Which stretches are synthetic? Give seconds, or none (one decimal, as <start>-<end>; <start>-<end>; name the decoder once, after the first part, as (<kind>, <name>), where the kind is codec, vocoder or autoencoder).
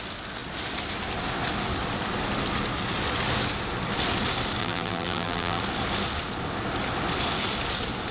4.6-5.6 (vocoder, BigVGAN v2)